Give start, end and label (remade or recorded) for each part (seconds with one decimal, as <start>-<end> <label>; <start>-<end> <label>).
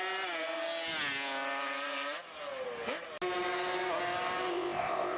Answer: 0.0-4.5 recorded; 4.5-5.2 remade